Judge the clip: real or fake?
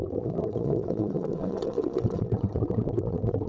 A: fake